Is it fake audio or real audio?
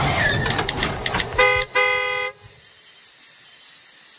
real